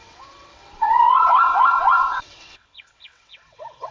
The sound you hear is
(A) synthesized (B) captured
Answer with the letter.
A